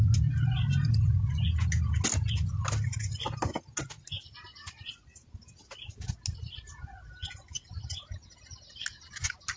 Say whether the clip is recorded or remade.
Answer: recorded